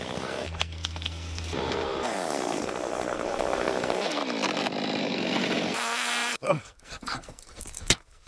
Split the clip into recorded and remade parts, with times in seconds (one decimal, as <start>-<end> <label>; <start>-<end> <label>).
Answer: 0.0-4.2 remade; 4.2-5.0 recorded; 5.0-8.3 remade